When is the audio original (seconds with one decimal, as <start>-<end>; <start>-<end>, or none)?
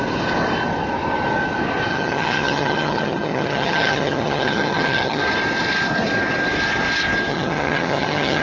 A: 0.0-1.9; 5.2-7.3